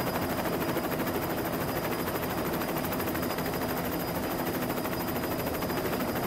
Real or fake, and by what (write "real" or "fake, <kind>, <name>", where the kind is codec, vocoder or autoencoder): fake, vocoder, BigVGAN v2